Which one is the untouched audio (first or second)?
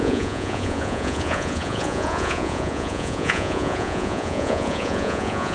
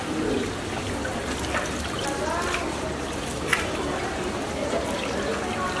second